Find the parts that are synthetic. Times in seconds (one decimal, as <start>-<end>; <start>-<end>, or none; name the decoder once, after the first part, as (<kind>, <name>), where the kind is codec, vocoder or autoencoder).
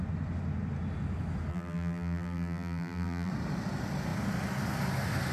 1.5-3.3 (vocoder, BigVGAN v2)